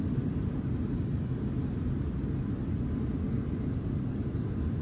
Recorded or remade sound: recorded